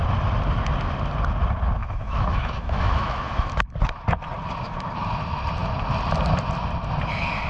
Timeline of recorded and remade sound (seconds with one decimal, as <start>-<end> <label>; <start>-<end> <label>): 0.0-1.8 recorded; 1.8-3.5 remade; 3.5-7.5 recorded